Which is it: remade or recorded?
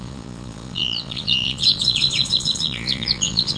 remade